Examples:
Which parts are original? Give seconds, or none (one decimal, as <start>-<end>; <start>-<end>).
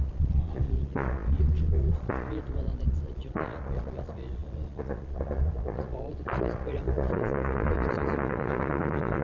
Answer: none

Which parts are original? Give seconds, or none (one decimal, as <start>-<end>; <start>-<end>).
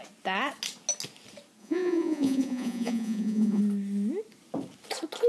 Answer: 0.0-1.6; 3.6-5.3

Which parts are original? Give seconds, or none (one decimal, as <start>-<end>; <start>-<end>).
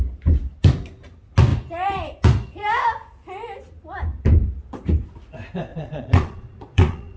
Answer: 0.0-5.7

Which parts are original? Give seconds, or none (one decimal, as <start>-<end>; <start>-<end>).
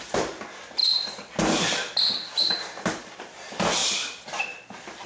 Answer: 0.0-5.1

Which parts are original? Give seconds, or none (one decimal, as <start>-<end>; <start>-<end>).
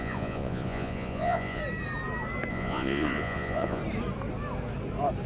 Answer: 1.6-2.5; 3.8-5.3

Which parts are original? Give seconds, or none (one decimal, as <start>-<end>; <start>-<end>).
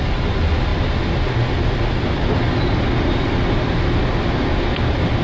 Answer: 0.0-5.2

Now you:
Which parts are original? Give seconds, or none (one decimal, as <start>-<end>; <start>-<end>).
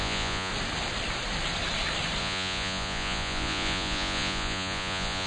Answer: 0.5-2.2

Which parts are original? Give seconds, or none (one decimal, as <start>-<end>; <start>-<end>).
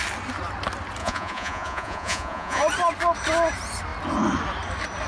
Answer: 0.0-1.0; 2.6-5.1